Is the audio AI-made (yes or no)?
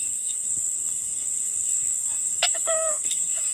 yes